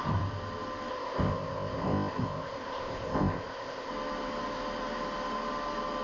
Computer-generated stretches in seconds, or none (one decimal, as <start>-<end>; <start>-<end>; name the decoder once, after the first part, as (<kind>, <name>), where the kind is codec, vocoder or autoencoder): 0.9-3.9 (codec, ZipCodec)